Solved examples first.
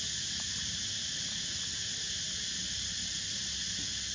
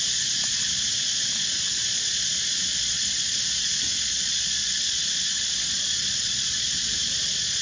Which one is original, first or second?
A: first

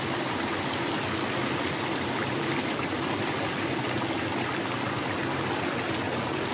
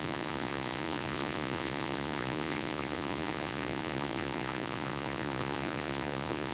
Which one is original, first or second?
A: first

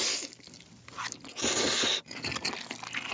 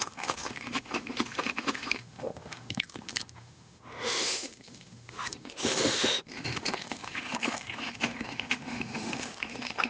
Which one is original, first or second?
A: first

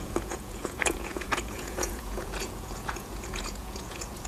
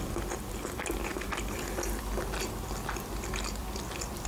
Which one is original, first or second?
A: second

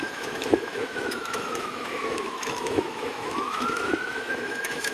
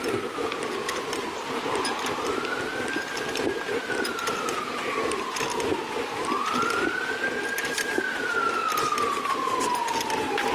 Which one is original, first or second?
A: second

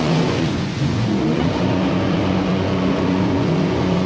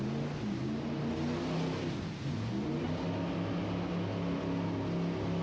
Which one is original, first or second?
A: second